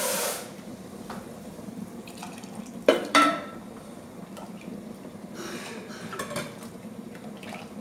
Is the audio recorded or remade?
remade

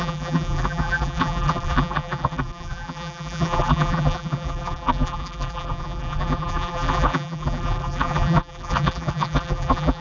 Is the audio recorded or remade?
remade